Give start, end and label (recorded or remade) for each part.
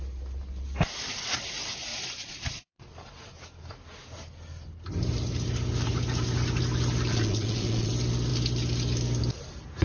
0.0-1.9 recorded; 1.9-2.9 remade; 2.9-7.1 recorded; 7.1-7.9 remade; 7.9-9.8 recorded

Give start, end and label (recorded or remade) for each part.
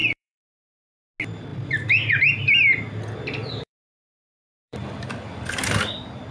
0.0-0.7 remade; 0.7-1.5 recorded; 1.5-2.2 remade; 2.2-3.4 recorded; 3.4-5.6 remade; 5.6-6.3 recorded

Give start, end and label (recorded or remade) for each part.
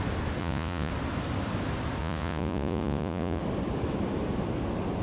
0.0-0.4 recorded; 0.4-0.9 remade; 0.9-2.0 recorded; 2.0-3.4 remade; 3.4-5.0 recorded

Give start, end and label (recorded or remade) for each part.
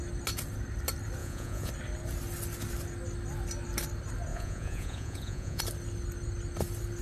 0.0-1.2 recorded; 1.2-1.7 remade; 1.7-4.3 recorded; 4.3-5.6 remade; 5.6-7.0 recorded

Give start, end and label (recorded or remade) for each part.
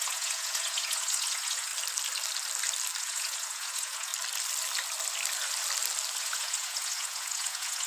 0.0-1.7 remade; 1.7-3.0 recorded; 3.0-4.1 remade; 4.1-6.2 recorded; 6.2-7.9 remade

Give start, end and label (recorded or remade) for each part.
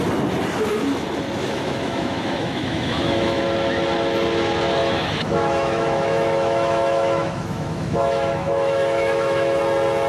0.0-1.4 recorded; 1.4-3.4 remade; 3.4-4.8 recorded; 4.8-9.6 remade; 9.6-10.1 recorded